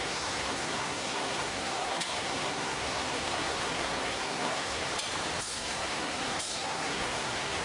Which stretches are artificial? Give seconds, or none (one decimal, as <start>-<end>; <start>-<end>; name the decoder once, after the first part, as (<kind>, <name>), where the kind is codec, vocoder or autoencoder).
0.0-4.9 (codec, SNAC); 5.4-7.6